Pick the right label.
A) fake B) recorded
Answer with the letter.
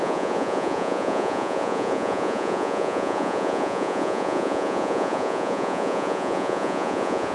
A